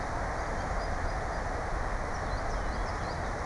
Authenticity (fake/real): real